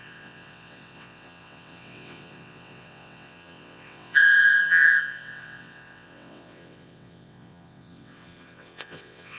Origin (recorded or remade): remade